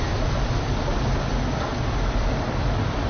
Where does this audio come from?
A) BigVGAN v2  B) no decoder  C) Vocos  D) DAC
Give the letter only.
A